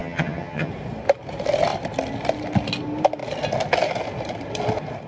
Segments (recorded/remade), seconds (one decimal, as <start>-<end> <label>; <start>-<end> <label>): 0.0-0.7 remade; 0.7-5.1 recorded